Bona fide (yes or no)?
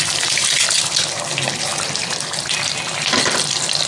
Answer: no